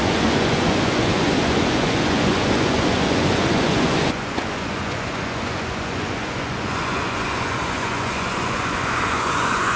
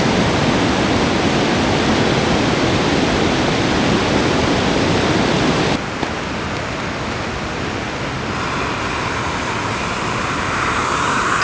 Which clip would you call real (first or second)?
second